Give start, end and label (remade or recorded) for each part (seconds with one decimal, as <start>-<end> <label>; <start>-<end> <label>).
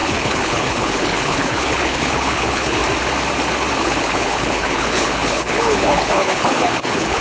0.0-2.8 remade; 2.8-3.8 recorded; 3.8-7.2 remade